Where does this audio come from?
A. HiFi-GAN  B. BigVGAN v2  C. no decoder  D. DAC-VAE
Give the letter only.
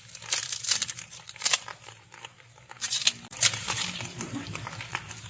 B